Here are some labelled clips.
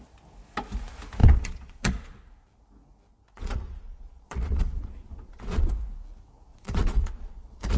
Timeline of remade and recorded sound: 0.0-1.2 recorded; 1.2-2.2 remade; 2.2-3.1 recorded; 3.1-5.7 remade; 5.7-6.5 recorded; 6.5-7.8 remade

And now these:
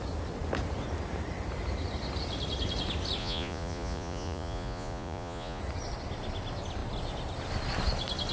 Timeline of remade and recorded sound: 0.0-3.2 recorded; 3.2-5.6 remade; 5.6-8.3 recorded

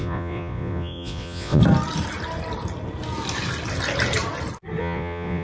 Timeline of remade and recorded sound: 0.0-1.6 remade; 1.6-4.8 recorded; 4.8-5.4 remade

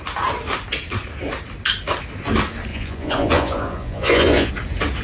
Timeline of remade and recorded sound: 0.0-2.7 recorded; 2.7-4.5 remade; 4.5-5.0 recorded

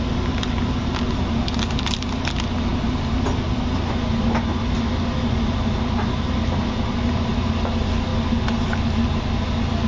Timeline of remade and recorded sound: 0.0-9.9 recorded

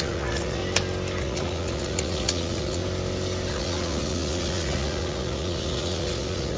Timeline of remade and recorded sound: 0.0-0.6 remade; 0.6-1.2 recorded; 1.2-2.8 remade; 2.8-3.5 recorded; 3.5-6.6 remade

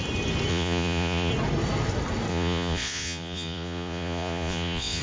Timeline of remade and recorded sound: 0.0-0.5 recorded; 0.5-1.3 remade; 1.3-2.3 recorded; 2.3-5.0 remade